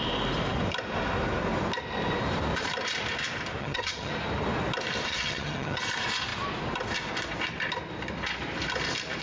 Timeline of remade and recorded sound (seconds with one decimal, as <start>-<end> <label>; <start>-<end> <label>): 0.0-3.6 recorded; 3.6-4.1 remade; 4.1-5.1 recorded; 5.1-5.8 remade; 5.8-9.2 recorded

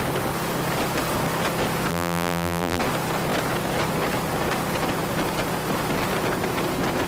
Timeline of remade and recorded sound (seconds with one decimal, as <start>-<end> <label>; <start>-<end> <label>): 0.0-1.9 recorded; 1.9-2.8 remade; 2.8-7.1 recorded